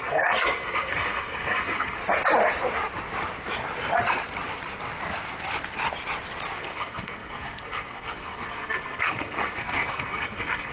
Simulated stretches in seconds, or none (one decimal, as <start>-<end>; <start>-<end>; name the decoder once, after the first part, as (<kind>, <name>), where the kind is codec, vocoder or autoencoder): 0.0-2.0 (codec, SNAC); 6.6-10.7